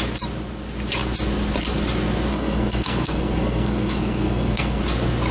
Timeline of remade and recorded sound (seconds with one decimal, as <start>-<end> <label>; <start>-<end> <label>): 0.0-2.3 recorded; 2.3-4.8 remade; 4.8-5.3 recorded